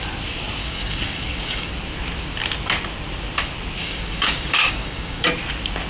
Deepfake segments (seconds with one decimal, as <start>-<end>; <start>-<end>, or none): 0.6-1.7; 3.8-5.3